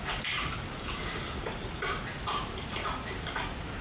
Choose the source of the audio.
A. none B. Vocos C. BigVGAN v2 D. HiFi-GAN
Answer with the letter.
A